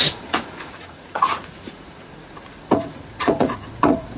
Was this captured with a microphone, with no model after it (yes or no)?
no